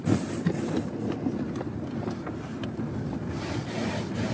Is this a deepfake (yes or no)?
no